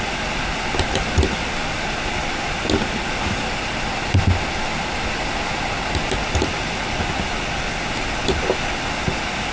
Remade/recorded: recorded